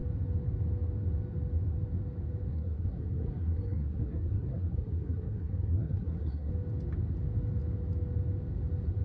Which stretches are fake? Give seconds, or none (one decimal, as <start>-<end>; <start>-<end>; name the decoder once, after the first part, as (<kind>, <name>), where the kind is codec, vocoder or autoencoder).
2.5-6.5 (codec, SNAC)